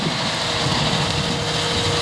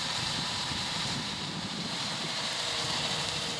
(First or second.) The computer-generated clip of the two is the second